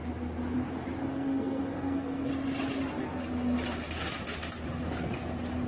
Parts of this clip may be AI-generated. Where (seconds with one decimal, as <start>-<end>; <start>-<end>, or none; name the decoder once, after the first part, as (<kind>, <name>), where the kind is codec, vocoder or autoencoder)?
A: 1.0-2.3 (codec, SNAC)